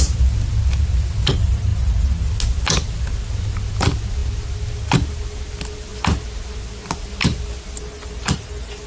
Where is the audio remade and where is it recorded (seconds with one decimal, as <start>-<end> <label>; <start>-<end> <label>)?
0.0-8.9 recorded